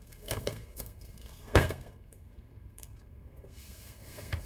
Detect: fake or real fake